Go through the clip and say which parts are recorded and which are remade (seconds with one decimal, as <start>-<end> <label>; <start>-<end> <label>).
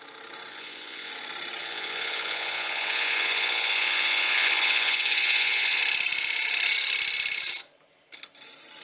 0.0-0.5 recorded; 0.5-1.1 remade; 1.1-1.6 recorded; 1.6-5.8 remade; 5.8-8.8 recorded